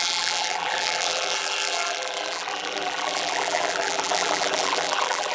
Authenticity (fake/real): fake